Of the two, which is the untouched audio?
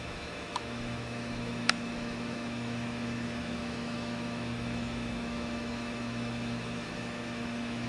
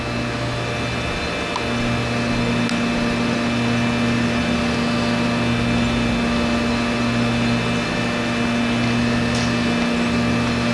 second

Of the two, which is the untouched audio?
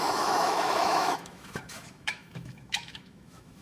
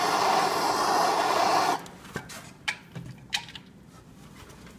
second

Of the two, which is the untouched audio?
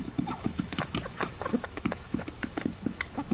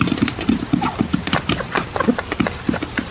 second